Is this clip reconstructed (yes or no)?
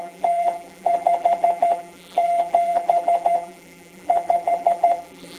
yes